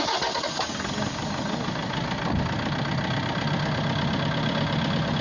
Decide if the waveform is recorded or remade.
recorded